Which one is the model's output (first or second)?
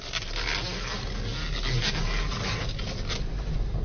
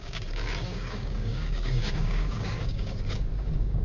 second